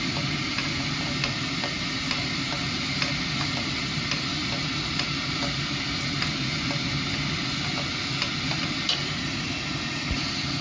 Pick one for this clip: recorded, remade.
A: recorded